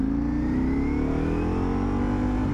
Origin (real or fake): real